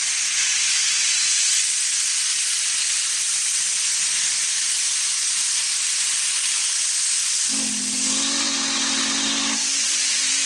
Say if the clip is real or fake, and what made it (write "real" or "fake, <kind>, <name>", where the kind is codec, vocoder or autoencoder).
real